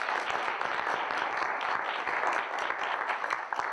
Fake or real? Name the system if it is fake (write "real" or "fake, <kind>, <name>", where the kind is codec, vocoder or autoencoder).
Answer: fake, vocoder, BigVGAN v2